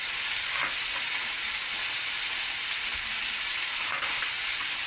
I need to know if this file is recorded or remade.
remade